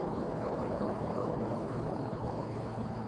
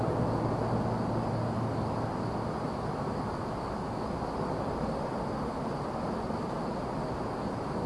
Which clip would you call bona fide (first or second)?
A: second